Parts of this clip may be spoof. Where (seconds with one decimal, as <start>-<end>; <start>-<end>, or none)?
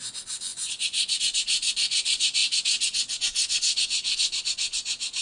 0.0-5.2